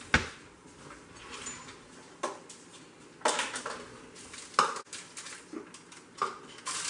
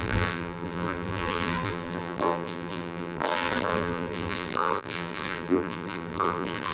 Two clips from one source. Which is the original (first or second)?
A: first